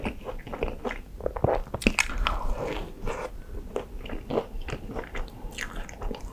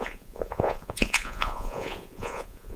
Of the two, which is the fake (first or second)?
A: second